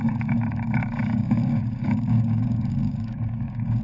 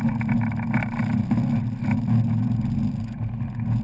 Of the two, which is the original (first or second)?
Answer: second